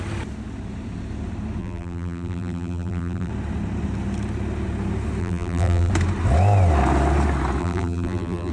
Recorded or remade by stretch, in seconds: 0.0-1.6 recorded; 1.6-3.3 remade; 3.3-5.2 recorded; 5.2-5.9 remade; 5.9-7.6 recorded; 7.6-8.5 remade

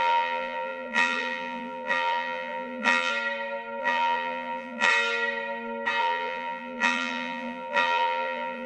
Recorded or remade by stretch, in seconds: 0.0-3.1 remade; 3.1-3.8 recorded; 3.8-4.9 remade; 4.9-6.0 recorded; 6.0-8.7 remade

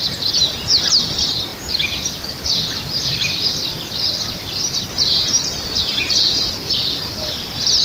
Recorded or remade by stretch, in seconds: 0.0-7.8 recorded

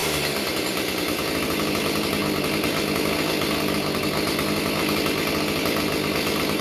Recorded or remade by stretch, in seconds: 0.0-2.2 remade; 2.2-6.6 recorded

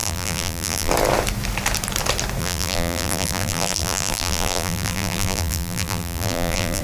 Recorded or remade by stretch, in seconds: 0.0-0.9 remade; 0.9-2.4 recorded; 2.4-6.8 remade